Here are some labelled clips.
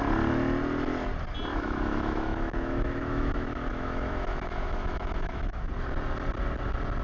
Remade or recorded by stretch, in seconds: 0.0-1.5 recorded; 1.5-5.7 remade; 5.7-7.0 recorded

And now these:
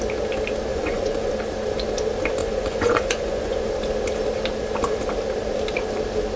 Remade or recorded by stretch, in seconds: 0.0-0.7 recorded; 0.7-1.3 remade; 1.3-2.4 recorded; 2.4-3.7 remade; 3.7-6.4 recorded

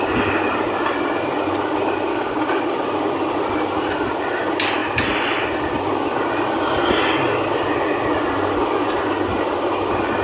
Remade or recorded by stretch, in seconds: 0.0-2.1 recorded; 2.1-2.6 remade; 2.6-10.2 recorded

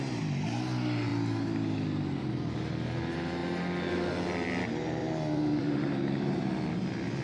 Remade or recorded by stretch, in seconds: 0.0-5.0 recorded; 5.0-6.6 remade; 6.6-7.2 recorded

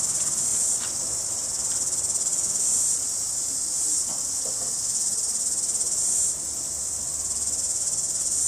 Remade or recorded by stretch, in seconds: 0.0-8.5 recorded

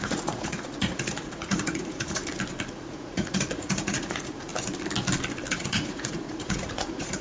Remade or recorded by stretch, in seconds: 0.0-2.2 remade; 2.2-2.7 recorded; 2.7-4.5 remade; 4.5-5.5 recorded; 5.5-7.2 remade

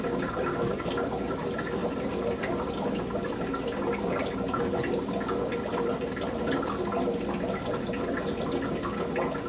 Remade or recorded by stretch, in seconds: 0.0-1.8 recorded; 1.8-2.4 remade; 2.4-9.5 recorded